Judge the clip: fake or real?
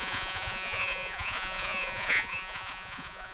fake